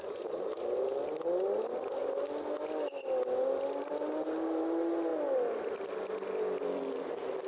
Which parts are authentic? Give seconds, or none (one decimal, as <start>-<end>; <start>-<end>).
0.0-7.5